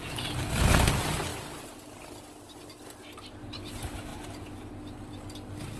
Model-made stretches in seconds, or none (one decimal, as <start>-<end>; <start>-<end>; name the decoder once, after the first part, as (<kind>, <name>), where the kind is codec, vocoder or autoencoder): none